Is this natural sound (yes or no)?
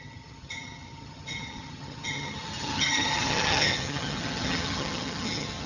no